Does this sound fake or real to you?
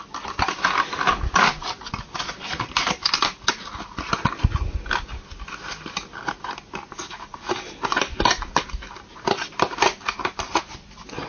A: real